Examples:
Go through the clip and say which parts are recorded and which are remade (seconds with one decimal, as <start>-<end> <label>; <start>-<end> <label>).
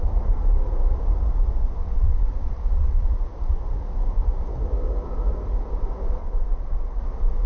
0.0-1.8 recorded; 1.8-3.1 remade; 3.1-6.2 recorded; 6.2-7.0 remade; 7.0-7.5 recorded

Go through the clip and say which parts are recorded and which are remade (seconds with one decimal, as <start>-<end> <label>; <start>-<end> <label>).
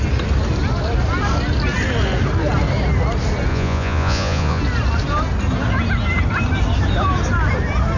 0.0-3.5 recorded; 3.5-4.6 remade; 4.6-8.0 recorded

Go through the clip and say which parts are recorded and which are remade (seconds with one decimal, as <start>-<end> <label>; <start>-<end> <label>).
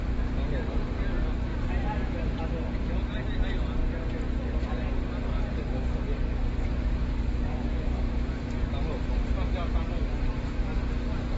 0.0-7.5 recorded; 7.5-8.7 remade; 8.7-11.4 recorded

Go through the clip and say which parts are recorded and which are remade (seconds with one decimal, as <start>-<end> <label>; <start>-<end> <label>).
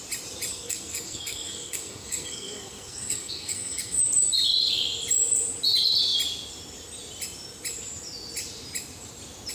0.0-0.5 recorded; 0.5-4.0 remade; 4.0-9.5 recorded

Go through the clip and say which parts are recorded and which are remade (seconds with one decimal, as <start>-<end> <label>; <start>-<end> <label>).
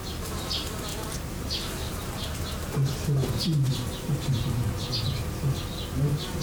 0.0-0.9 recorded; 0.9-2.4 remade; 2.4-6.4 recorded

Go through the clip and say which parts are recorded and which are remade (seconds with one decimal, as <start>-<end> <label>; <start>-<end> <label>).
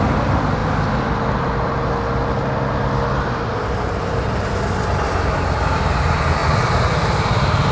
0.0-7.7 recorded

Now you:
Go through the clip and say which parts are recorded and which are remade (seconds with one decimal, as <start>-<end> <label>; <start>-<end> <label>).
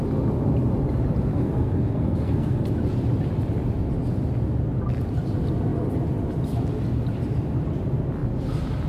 0.0-1.3 recorded; 1.3-2.7 remade; 2.7-8.9 recorded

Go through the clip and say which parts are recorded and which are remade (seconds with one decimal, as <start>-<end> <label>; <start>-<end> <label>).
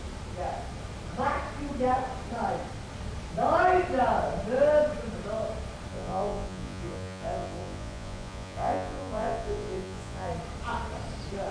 0.0-5.9 recorded; 5.9-10.3 remade; 10.3-11.5 recorded